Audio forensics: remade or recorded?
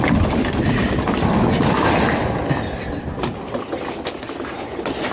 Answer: recorded